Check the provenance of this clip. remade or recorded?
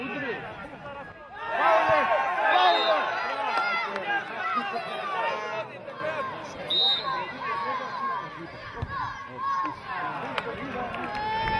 recorded